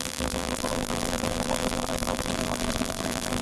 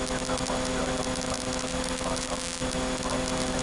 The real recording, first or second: second